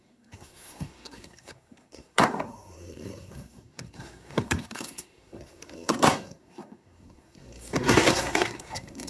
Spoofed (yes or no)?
yes